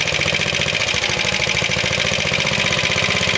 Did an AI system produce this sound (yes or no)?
yes